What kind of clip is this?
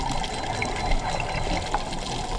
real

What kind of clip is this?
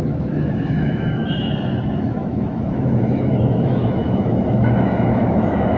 fake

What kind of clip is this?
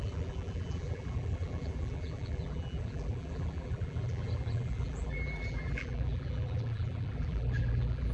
fake